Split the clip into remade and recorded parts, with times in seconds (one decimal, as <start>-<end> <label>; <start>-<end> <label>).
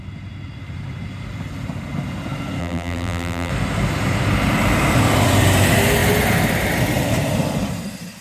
0.0-2.6 recorded; 2.6-3.5 remade; 3.5-8.2 recorded